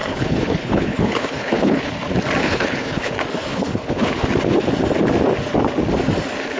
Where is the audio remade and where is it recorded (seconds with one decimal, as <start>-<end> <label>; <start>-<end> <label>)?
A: 0.0-1.9 remade; 1.9-2.4 recorded; 2.4-3.1 remade; 3.1-3.5 recorded; 3.5-4.2 remade; 4.2-6.6 recorded